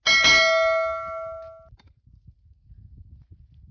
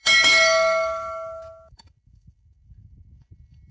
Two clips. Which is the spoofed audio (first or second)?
second